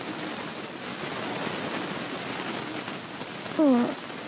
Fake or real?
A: real